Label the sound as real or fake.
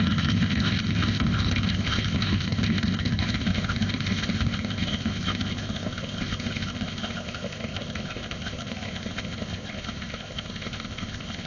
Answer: fake